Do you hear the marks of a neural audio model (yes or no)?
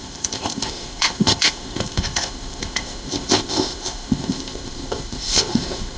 yes